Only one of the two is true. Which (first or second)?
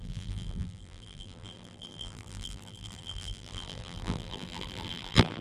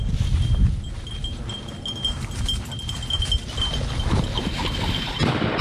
second